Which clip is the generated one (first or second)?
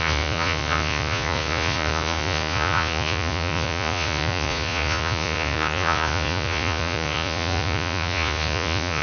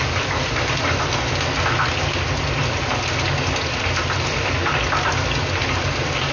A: first